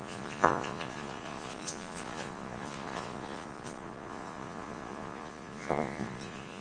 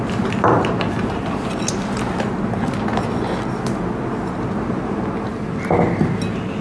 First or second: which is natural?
second